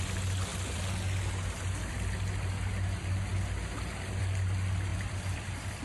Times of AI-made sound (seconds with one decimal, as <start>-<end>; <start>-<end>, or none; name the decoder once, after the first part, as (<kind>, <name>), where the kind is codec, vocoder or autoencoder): 4.9-5.8 (vocoder, BigVGAN v2)